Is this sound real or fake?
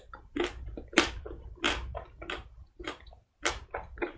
fake